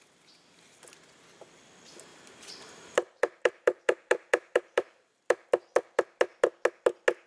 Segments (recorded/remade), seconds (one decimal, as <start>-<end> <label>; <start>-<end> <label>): 0.0-2.1 recorded; 2.1-5.2 remade; 5.2-7.3 recorded